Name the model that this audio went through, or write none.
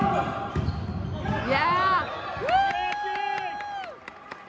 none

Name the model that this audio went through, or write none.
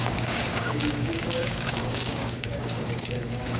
codec, DAC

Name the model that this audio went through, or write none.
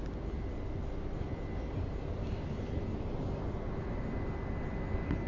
none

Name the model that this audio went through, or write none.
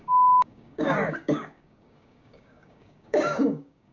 codec, DAC